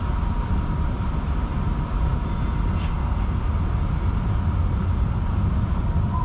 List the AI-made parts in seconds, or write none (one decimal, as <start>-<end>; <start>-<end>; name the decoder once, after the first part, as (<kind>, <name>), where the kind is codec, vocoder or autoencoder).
0.0-2.1 (vocoder, BigVGAN v2); 5.8-6.2